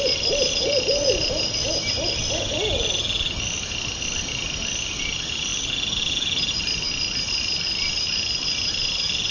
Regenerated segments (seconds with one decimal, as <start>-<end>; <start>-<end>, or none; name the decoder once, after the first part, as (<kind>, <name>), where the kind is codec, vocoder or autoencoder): none

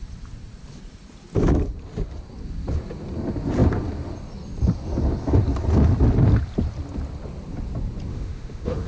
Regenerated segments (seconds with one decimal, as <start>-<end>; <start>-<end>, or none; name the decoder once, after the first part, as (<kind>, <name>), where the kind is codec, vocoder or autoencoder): 8.1-8.9 (autoencoder, DAC-VAE)